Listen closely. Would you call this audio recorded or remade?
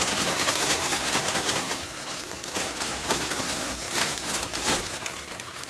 remade